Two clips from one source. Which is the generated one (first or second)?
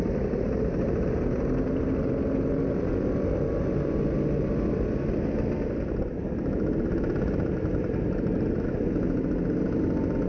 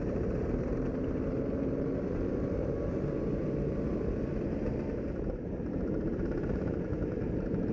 second